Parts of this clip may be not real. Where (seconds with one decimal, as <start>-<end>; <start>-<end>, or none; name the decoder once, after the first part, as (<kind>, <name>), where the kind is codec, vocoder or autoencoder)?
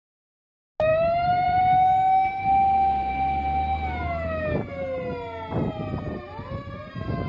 0.9-1.6 (vocoder, BigVGAN v2)